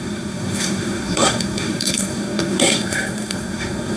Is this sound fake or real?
fake